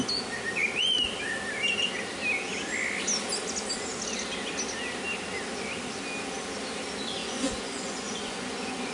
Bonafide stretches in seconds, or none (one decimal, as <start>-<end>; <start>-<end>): 0.0-7.2